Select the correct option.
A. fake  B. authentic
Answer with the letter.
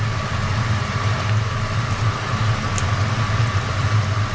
B